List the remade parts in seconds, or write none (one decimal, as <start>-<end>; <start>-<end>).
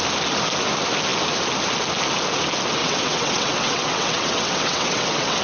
2.8-5.4